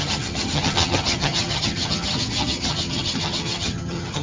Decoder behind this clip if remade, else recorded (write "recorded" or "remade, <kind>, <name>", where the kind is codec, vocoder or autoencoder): remade, vocoder, HiFi-GAN